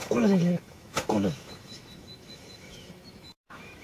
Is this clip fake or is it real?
fake